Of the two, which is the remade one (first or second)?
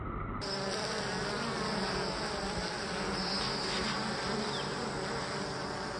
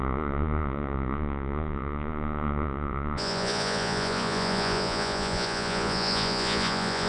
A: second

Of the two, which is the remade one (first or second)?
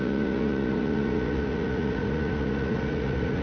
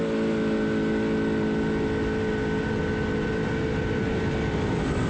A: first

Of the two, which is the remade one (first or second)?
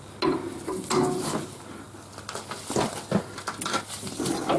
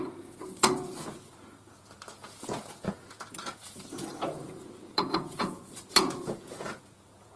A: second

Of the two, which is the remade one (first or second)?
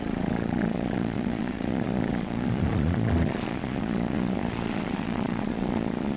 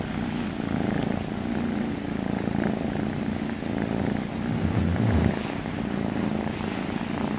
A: first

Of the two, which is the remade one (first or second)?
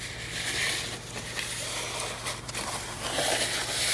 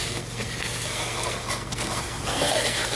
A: second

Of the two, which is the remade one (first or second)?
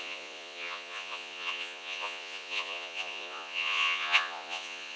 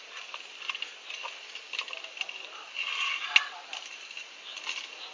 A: first